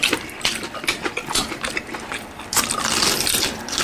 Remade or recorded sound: remade